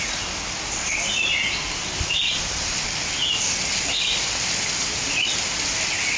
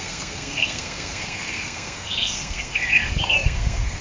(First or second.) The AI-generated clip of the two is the second